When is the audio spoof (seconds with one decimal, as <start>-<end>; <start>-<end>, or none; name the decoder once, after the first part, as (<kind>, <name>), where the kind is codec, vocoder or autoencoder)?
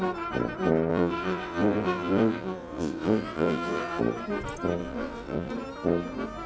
0.9-4.0 (vocoder, WaveNeXt); 4.8-5.5